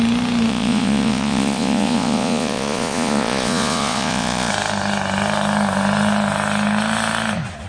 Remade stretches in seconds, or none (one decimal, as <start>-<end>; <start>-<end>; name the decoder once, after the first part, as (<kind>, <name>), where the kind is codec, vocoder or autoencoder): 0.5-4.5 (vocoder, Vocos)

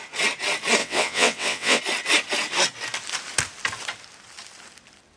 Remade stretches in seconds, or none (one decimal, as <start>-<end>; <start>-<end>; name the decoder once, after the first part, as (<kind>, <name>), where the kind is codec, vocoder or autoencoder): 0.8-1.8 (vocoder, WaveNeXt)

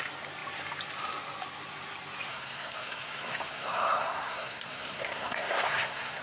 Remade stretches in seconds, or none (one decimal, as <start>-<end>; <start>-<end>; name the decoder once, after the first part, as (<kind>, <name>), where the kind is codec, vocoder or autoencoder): 2.3-6.2 (codec, SNAC)

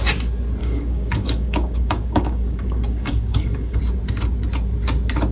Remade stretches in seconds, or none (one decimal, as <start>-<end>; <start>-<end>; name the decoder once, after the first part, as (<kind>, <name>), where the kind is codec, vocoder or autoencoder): 0.6-3.8 (codec, DAC)